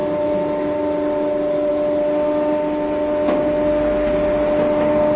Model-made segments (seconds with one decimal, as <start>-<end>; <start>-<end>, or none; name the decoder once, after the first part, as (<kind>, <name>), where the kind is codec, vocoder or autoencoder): none